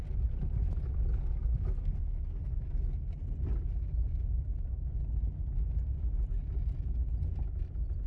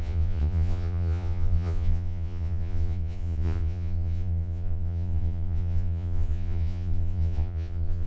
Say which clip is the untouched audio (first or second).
first